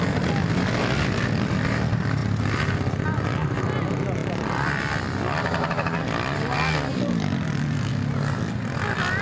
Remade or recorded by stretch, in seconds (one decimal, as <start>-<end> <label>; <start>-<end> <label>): 0.0-9.2 recorded